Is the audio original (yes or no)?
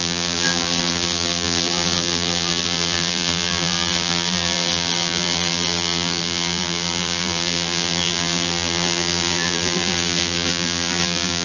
no